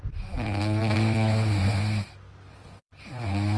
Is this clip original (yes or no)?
yes